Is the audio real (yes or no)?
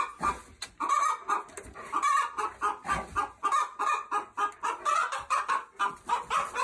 yes